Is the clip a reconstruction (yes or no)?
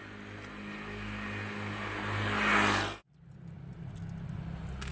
no